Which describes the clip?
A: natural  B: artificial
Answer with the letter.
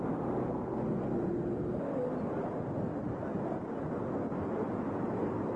A